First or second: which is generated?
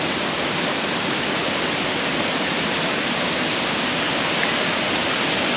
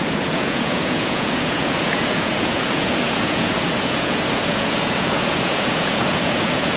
second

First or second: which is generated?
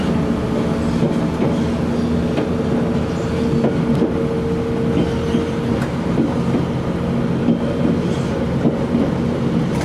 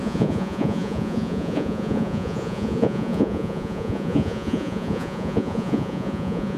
second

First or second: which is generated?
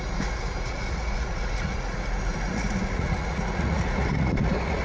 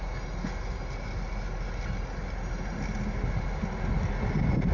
first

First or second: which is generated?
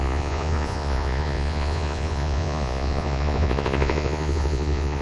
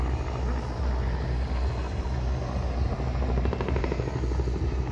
first